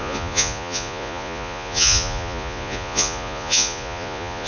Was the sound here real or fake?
fake